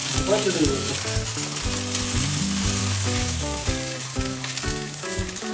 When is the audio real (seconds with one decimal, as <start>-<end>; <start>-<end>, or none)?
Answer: 0.9-2.8